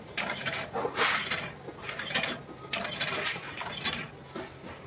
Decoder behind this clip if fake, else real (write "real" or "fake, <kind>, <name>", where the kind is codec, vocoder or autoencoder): real